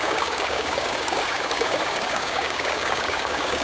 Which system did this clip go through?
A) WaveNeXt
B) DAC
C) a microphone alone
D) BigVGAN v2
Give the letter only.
B